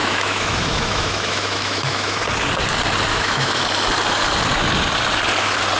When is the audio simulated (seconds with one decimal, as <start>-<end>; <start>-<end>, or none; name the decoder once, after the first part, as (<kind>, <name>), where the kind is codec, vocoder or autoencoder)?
0.0-2.2 (autoencoder, DAC-VAE); 3.1-3.6